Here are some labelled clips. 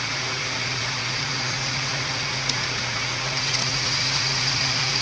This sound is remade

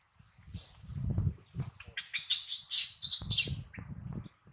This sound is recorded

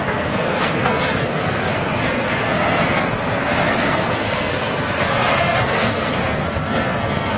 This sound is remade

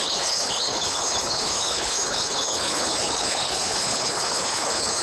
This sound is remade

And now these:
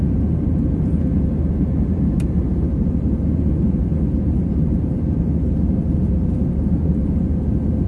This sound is remade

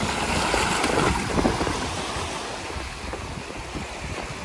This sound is recorded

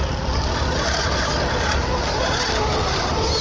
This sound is recorded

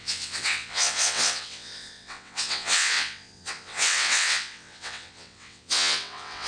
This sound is remade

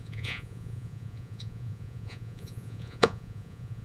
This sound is remade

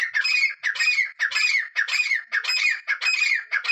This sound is recorded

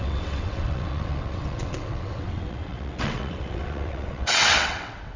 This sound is remade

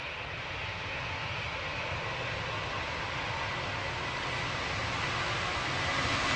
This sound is recorded